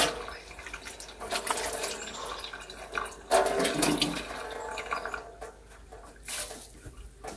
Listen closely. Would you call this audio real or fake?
real